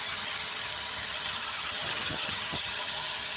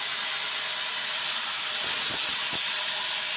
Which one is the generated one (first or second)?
first